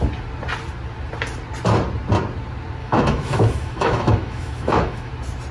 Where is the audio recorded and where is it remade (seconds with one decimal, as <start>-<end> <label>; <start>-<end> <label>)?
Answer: 0.0-2.8 recorded; 2.8-5.1 remade; 5.1-5.5 recorded